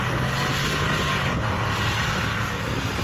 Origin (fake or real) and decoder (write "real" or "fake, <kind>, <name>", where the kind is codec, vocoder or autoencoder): real